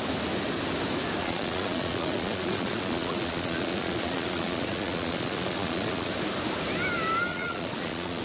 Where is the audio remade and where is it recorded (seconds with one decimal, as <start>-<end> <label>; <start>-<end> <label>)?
0.0-1.2 recorded; 1.2-6.1 remade; 6.1-7.3 recorded; 7.3-8.2 remade